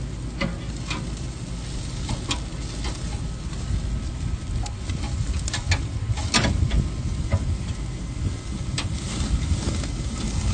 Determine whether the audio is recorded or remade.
recorded